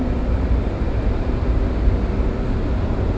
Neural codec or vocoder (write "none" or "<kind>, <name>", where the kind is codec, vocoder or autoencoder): none